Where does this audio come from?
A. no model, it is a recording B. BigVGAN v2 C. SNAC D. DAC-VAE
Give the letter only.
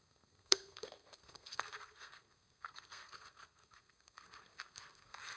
C